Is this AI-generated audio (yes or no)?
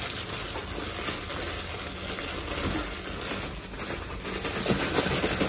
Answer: no